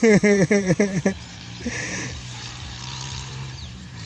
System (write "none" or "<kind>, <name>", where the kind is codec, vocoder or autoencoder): vocoder, BigVGAN v2